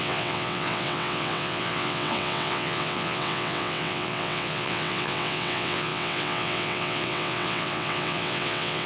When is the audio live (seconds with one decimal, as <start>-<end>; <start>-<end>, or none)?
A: none